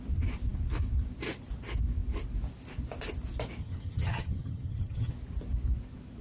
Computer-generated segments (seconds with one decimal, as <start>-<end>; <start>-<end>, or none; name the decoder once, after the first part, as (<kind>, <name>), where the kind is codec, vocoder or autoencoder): 3.6-5.1 (vocoder, HiFi-GAN)